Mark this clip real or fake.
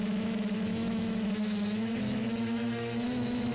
fake